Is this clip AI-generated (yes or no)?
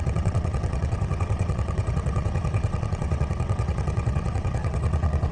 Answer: yes